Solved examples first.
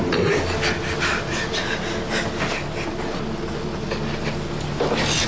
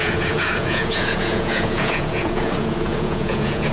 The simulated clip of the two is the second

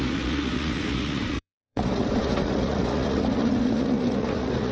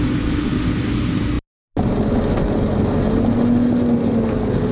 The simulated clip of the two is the first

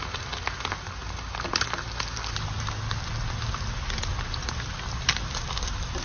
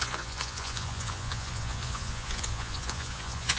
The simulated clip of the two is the second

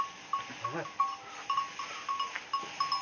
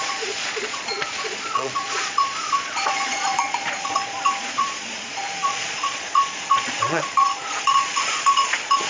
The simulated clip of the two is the second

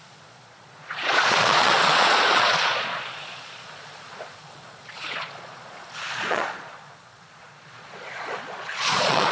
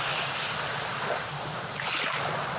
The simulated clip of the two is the first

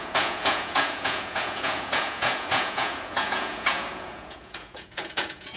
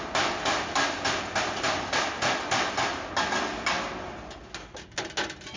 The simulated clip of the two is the first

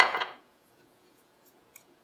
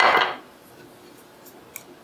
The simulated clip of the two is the first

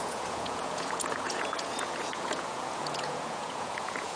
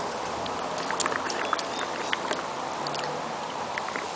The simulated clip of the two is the first